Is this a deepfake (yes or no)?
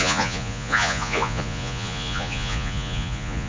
yes